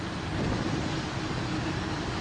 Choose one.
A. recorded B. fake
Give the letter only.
A